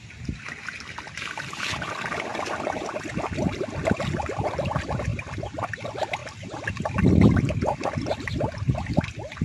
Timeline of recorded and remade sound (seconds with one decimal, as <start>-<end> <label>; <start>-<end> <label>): 0.0-9.4 recorded